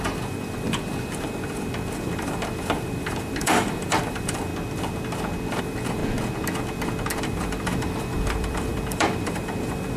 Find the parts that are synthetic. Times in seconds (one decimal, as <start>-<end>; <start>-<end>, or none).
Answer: 0.0-4.5; 5.6-6.0; 7.2-10.0

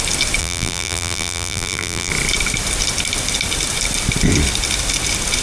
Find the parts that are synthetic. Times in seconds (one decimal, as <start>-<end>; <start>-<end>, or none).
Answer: 0.4-2.1

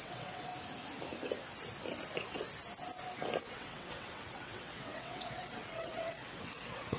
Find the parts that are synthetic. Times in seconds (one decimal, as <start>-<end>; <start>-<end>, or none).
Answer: 0.0-0.5; 3.5-7.0

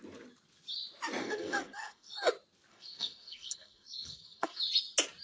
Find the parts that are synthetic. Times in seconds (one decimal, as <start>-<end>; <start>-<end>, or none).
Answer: 1.2-2.3; 2.7-4.6